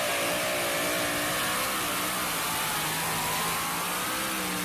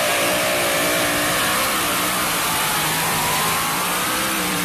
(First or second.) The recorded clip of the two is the first